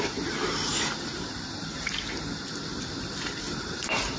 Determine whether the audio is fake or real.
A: fake